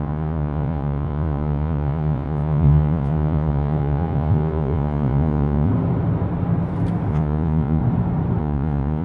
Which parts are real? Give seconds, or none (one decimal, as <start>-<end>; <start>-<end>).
5.7-7.1; 7.8-8.4